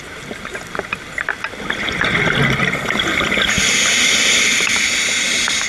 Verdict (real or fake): real